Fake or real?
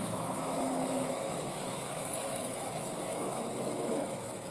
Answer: fake